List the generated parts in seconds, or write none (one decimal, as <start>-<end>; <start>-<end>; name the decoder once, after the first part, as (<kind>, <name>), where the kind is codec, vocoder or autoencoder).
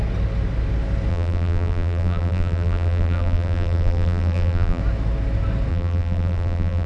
1.1-4.8 (vocoder, BigVGAN v2); 5.7-6.9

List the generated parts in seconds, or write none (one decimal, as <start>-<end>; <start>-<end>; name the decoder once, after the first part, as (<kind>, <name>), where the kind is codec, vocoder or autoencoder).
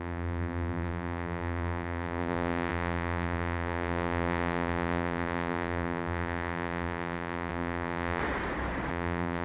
0.0-8.2 (vocoder, BigVGAN v2); 8.9-9.4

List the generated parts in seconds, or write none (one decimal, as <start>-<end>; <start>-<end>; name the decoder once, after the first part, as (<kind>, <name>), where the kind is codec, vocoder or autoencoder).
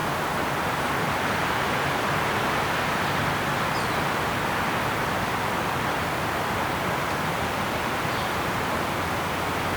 none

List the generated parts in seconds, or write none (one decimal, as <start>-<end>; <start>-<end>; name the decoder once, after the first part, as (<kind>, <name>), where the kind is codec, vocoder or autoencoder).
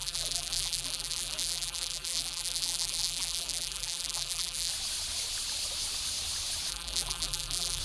0.0-4.7 (vocoder, BigVGAN v2); 6.7-7.8